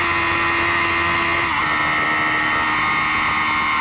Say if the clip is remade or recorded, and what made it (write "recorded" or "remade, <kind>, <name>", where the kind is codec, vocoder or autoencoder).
recorded